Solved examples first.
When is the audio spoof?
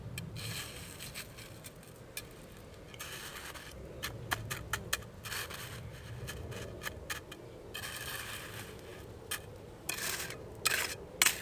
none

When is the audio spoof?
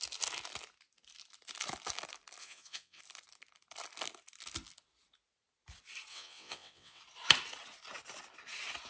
2.4-3.0 (vocoder, WaveNeXt); 6.1-7.0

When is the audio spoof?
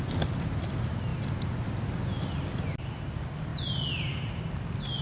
none